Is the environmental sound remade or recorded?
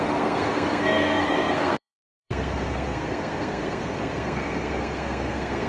remade